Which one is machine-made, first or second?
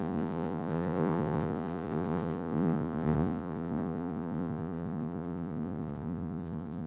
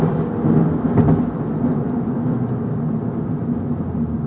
first